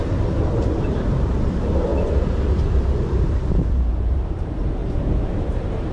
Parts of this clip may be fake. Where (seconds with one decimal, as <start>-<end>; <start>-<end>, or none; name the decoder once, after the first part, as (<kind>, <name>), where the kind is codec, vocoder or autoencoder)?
0.5-1.9 (vocoder, BigVGAN v2); 3.0-4.8; 5.3-5.9